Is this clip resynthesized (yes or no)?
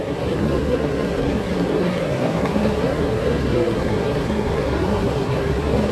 yes